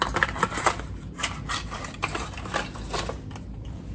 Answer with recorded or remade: recorded